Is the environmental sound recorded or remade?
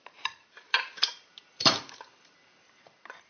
remade